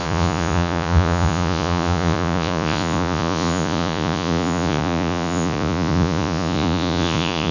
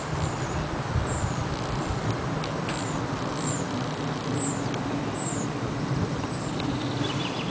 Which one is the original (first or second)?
second